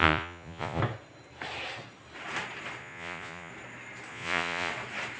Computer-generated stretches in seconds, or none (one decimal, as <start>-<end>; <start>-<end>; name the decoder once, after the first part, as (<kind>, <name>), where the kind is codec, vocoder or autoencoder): 0.0-0.8 (vocoder, Vocos); 2.8-3.5; 4.1-4.7